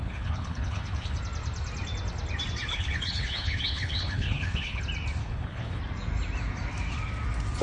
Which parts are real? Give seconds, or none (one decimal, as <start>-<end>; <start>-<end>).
1.2-2.7; 4.8-5.2; 5.8-7.6